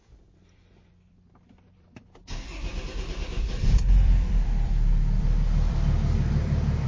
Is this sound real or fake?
fake